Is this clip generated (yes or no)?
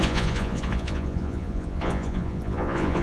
yes